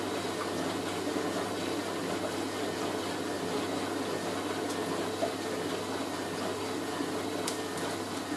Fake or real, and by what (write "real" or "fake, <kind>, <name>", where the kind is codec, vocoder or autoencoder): real